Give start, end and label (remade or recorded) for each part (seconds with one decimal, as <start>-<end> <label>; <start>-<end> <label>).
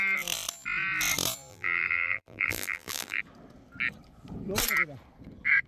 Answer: 0.0-1.5 recorded; 1.5-3.2 remade; 3.2-5.7 recorded